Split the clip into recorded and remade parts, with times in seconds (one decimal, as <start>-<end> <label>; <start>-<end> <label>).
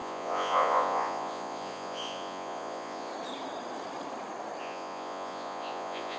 0.0-3.1 remade; 3.1-4.6 recorded; 4.6-6.2 remade